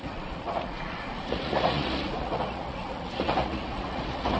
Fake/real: fake